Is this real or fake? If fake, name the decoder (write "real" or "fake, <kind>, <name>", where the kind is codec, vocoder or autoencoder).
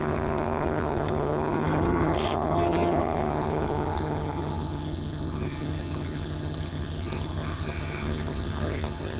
fake, vocoder, HiFi-GAN